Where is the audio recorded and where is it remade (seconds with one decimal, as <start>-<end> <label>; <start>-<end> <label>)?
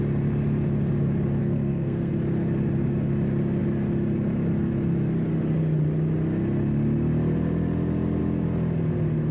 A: 0.0-1.4 recorded; 1.4-2.1 remade; 2.1-9.3 recorded